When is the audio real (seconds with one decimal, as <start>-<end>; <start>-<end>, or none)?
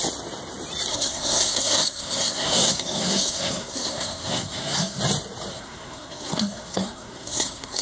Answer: 0.0-0.9; 5.0-5.5